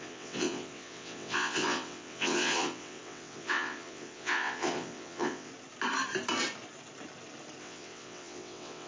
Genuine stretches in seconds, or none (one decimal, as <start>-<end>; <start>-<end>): 5.5-7.6